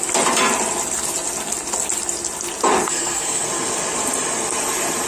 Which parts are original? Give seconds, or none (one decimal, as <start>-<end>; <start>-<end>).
0.0-2.8; 3.5-5.1